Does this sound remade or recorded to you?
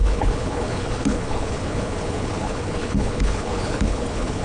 remade